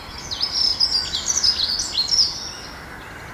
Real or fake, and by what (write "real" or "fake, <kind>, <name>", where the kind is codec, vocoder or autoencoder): real